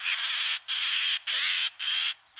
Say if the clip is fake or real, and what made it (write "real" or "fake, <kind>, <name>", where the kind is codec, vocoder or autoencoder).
real